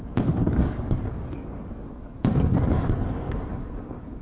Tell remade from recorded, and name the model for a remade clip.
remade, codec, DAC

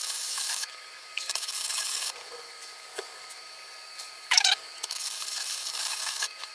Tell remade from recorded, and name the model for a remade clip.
remade, codec, DAC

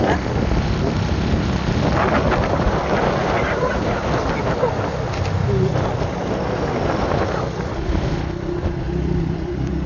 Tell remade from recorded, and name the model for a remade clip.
recorded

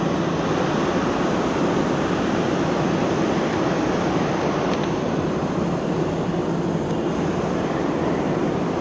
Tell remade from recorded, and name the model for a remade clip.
recorded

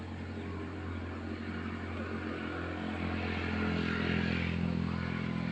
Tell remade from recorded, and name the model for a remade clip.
recorded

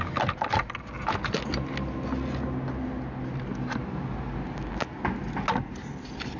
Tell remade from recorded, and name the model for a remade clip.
recorded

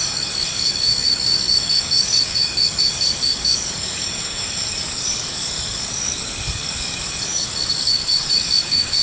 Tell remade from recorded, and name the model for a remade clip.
remade, codec, DAC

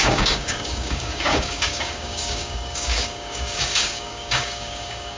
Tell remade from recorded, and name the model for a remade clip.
remade, codec, DAC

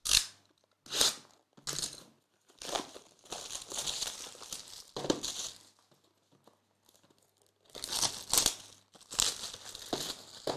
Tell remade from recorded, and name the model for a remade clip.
recorded